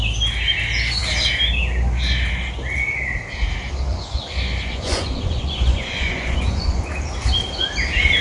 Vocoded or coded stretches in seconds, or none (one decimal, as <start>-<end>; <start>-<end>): 3.9-6.9